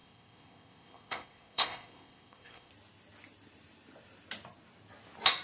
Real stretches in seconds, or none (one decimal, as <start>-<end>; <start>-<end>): 2.7-5.4